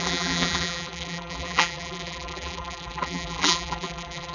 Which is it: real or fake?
fake